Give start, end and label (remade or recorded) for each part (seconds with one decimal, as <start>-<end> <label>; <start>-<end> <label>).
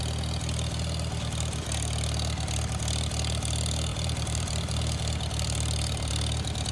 0.0-3.9 recorded; 3.9-6.1 remade; 6.1-6.7 recorded